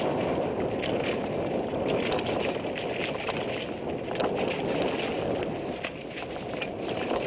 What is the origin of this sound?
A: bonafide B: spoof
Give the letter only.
A